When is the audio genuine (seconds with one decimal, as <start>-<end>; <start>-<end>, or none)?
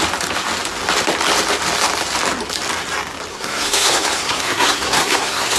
0.0-3.3